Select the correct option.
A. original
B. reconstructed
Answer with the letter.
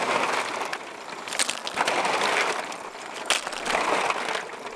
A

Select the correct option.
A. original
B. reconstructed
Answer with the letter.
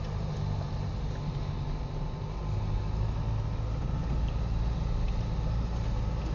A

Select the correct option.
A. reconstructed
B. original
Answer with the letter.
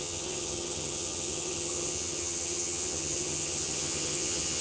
A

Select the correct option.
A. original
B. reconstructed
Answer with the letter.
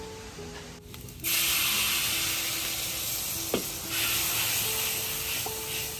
A